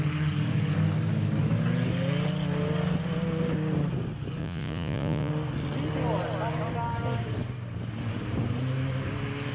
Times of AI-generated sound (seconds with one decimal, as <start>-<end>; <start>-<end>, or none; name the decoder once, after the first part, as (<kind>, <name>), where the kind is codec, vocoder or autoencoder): 4.4-5.3 (vocoder, Vocos)